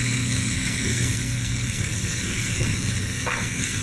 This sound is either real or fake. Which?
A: fake